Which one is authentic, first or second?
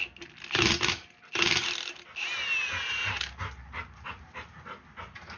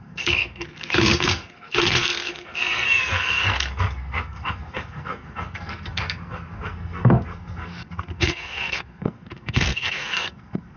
first